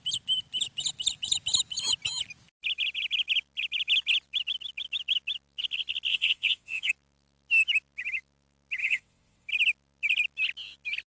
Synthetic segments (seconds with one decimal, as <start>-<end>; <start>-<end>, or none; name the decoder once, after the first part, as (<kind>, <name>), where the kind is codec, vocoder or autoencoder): 6.1-6.9 (vocoder, WaveNeXt); 8.8-9.5

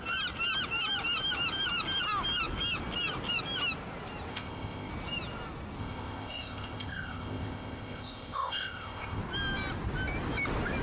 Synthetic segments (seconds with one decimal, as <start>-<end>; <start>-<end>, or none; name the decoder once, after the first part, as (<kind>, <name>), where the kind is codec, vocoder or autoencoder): 4.3-4.9 (codec, ZipCodec); 5.8-9.2